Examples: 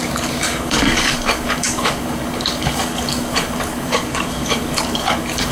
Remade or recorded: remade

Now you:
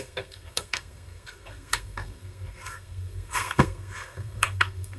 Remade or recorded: remade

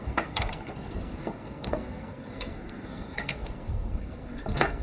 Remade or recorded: remade